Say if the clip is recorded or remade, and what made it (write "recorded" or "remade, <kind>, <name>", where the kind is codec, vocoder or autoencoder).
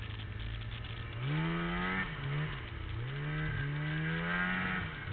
recorded